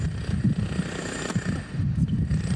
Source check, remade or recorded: recorded